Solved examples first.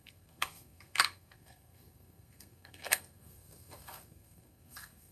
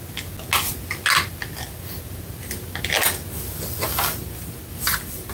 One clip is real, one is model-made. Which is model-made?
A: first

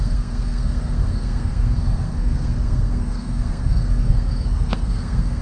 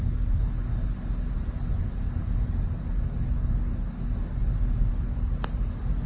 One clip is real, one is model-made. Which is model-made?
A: first